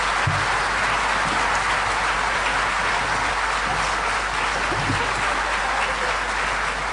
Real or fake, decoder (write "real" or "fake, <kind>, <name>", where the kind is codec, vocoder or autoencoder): real